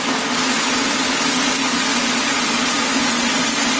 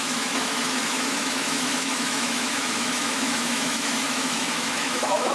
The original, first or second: first